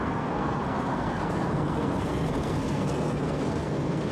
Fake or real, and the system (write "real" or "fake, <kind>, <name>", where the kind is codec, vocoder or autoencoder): fake, codec, SNAC